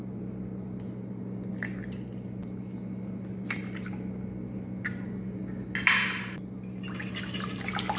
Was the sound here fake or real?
real